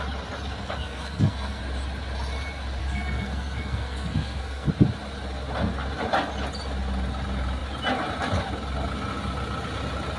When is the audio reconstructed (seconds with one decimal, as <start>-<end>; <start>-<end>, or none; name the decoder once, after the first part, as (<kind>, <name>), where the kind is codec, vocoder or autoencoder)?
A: 0.6-1.6 (codec, SNAC); 2.8-4.7